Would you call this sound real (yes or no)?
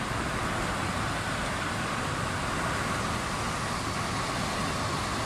yes